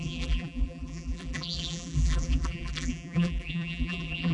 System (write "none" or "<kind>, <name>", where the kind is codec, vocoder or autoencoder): vocoder, BigVGAN v2